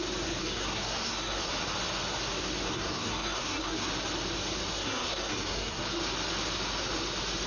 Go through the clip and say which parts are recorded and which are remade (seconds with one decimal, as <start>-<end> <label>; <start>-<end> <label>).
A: 0.0-0.4 recorded; 0.4-1.5 remade; 1.5-2.7 recorded; 2.7-3.9 remade; 3.9-4.7 recorded; 4.7-5.8 remade; 5.8-7.5 recorded